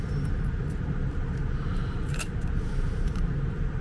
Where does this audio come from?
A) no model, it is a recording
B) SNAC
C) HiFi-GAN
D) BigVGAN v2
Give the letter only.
D